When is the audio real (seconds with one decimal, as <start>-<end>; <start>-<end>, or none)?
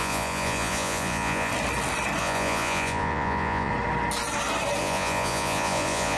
1.5-2.2; 3.7-4.8